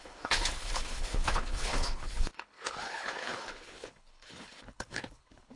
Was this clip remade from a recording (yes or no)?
yes